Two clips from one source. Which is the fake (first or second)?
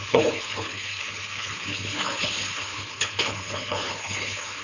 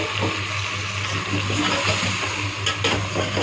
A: first